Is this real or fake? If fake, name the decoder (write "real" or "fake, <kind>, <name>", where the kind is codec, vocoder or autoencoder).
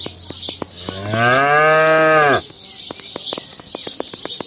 real